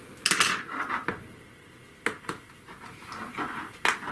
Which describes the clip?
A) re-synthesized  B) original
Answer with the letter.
B